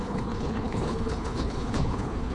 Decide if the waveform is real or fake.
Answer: fake